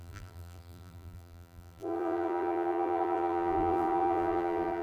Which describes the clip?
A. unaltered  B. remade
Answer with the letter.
B